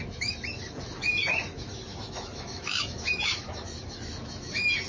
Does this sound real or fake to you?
fake